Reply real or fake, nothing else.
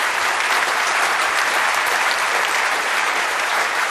fake